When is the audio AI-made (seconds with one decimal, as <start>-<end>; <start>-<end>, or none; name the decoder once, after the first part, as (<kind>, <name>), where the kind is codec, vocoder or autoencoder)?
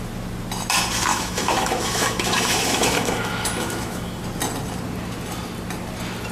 1.1-4.2 (autoencoder, DAC-VAE)